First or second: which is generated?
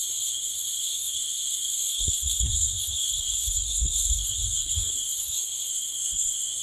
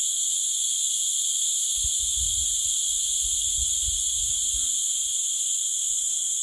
first